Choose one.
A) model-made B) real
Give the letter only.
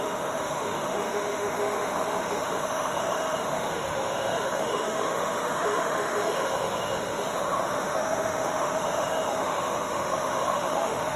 A